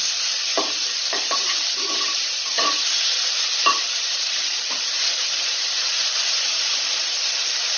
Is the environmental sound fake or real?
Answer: fake